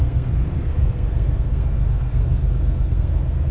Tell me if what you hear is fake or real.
fake